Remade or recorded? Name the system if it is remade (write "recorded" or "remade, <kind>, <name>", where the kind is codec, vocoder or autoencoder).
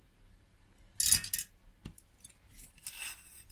recorded